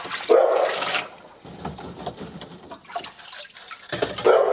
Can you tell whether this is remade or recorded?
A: recorded